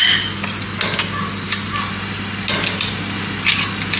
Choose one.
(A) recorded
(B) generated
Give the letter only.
A